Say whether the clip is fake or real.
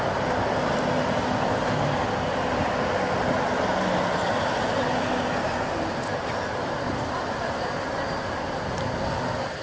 real